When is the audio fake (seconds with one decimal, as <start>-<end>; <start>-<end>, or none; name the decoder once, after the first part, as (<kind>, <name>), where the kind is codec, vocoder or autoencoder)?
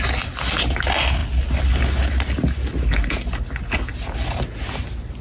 none